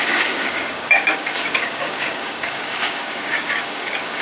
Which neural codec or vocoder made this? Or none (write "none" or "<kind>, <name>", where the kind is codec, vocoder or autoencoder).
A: codec, DAC